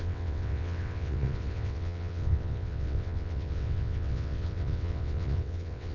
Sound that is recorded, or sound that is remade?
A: remade